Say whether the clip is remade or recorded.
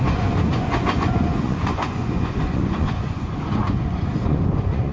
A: remade